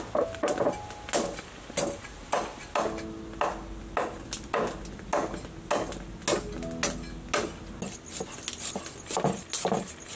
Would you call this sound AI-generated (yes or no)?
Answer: no